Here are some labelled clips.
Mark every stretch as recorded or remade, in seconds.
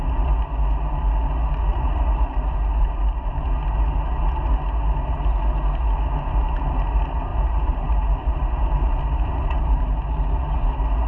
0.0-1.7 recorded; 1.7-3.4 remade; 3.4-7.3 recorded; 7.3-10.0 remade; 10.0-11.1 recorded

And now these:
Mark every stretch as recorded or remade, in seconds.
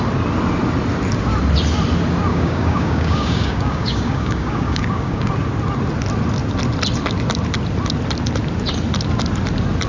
0.0-2.3 recorded; 2.3-5.3 remade; 5.3-9.9 recorded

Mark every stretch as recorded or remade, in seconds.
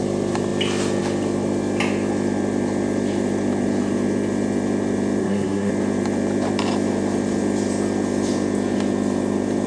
0.0-5.2 recorded; 5.2-5.7 remade; 5.7-9.7 recorded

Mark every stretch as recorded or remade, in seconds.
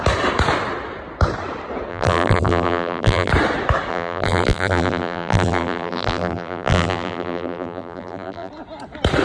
0.0-1.9 recorded; 1.9-3.3 remade; 3.3-3.9 recorded; 3.9-8.5 remade; 8.5-9.2 recorded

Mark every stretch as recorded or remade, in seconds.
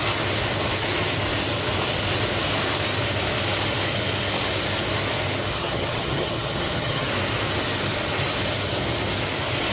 0.0-5.5 recorded; 5.5-7.1 remade; 7.1-9.7 recorded